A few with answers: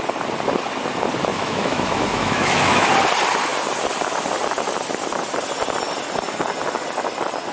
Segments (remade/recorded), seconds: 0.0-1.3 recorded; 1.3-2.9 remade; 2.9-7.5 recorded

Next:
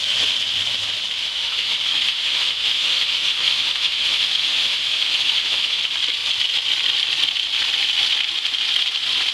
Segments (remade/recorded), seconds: 0.0-1.2 recorded; 1.2-5.8 remade; 5.8-9.3 recorded

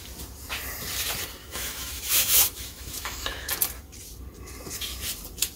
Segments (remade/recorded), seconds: 0.0-1.4 recorded; 1.4-3.5 remade; 3.5-5.6 recorded